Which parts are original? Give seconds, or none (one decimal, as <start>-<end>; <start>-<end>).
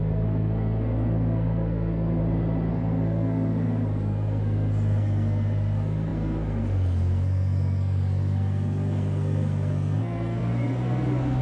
2.2-2.7